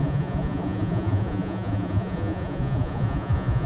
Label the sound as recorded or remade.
remade